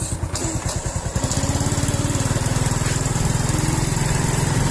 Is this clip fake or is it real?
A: real